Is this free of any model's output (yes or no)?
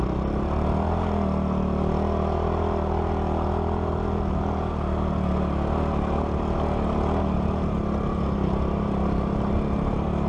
yes